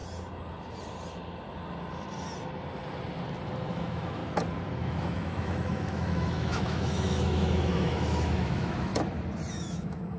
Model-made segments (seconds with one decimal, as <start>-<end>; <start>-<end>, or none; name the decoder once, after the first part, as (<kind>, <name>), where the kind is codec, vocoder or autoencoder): 3.7-4.2 (autoencoder, DAC-VAE); 4.8-8.9; 9.5-10.2